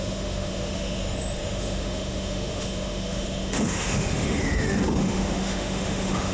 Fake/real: fake